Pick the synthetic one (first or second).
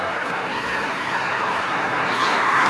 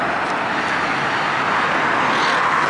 first